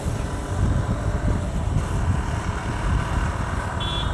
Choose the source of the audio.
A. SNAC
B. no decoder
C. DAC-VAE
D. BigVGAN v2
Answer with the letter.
B